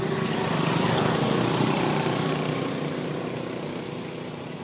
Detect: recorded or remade recorded